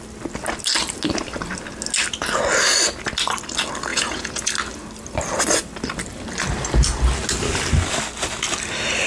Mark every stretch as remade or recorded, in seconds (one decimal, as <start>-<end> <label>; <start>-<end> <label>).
0.0-3.9 recorded; 3.9-4.5 remade; 4.5-9.1 recorded